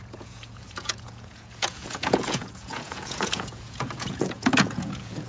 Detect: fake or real fake